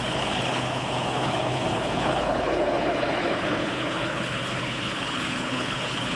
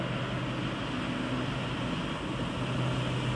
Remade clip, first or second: first